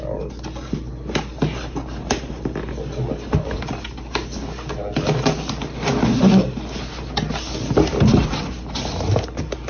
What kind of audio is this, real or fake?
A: real